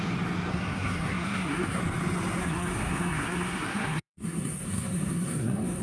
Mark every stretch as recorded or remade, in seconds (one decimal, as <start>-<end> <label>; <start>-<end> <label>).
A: 0.0-0.5 recorded; 0.5-1.8 remade; 1.8-2.4 recorded; 2.4-5.8 remade